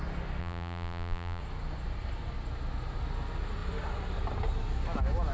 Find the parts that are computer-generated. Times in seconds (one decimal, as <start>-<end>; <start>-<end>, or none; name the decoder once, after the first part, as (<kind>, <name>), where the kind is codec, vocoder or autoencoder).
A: 0.4-1.4 (vocoder, BigVGAN v2)